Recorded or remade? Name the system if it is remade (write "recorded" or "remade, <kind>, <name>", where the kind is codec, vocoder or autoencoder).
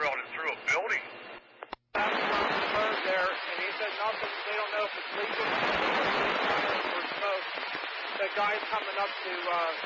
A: recorded